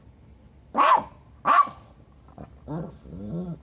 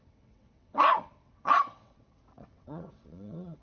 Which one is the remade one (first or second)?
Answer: second